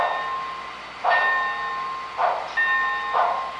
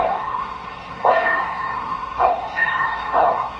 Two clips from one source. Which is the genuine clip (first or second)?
first